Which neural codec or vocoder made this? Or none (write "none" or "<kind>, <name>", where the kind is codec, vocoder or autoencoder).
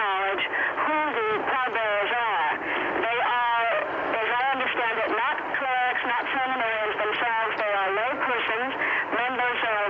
none